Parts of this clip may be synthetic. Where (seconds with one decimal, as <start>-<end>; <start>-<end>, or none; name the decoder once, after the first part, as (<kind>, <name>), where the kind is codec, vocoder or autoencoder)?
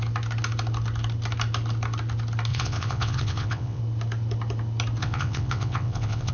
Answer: 2.5-3.8 (vocoder, WaveNeXt); 5.0-6.3